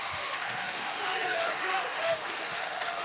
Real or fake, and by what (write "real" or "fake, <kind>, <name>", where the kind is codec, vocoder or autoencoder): fake, autoencoder, DAC-VAE